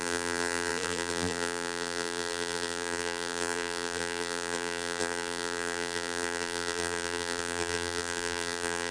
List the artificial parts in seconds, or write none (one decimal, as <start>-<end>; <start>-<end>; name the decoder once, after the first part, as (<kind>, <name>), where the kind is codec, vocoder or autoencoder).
0.0-8.9 (vocoder, BigVGAN v2)

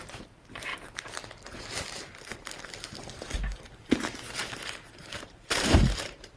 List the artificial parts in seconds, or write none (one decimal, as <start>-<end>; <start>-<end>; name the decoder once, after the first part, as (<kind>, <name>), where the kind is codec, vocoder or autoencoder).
0.0-0.7 (vocoder, BigVGAN v2); 3.9-4.4; 5.0-6.4

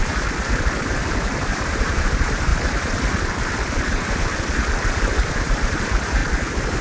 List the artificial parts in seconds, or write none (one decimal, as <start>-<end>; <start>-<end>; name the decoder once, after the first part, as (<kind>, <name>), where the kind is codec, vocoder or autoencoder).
1.2-2.5 (vocoder, BigVGAN v2); 5.3-6.2

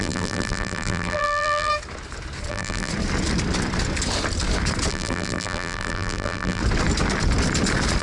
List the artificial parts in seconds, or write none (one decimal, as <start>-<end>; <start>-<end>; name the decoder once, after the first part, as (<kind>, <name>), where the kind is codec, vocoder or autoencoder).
0.0-1.7 (vocoder, BigVGAN v2); 2.5-2.9; 4.9-6.6

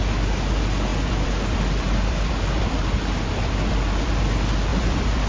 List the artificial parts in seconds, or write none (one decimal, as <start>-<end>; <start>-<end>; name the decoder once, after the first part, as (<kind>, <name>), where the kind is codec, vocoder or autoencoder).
0.9-4.1 (vocoder, BigVGAN v2); 4.7-5.3

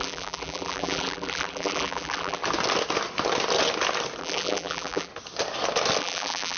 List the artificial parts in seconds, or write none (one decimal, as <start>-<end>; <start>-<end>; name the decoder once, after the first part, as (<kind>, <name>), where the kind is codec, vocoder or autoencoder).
0.0-2.4 (vocoder, BigVGAN v2); 4.2-5.1; 6.0-6.6

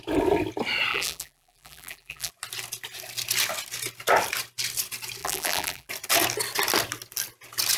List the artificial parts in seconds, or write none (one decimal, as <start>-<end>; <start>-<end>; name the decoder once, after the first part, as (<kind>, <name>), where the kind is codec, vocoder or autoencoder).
0.9-2.3 (vocoder, BigVGAN v2); 5.2-5.9